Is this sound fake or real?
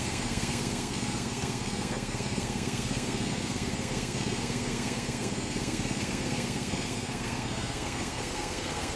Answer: fake